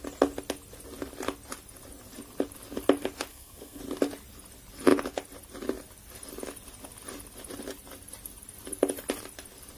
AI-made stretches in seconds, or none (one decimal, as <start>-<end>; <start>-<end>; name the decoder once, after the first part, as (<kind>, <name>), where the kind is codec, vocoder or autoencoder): 3.3-3.8 (codec, SNAC)